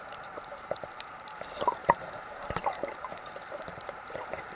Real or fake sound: fake